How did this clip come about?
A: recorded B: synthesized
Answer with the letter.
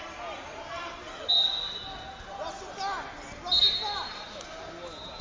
A